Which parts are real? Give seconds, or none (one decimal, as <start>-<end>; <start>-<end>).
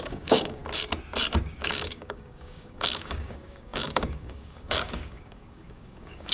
0.6-1.4